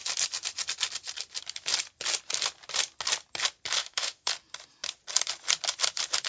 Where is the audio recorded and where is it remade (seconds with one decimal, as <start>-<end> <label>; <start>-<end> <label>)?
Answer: 0.0-3.8 recorded; 3.8-4.3 remade; 4.3-6.3 recorded